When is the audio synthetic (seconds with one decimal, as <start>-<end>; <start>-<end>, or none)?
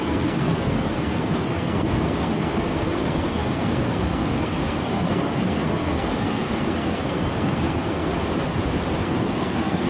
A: 0.0-8.1; 9.0-9.9